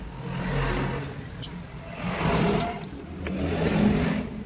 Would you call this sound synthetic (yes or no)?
no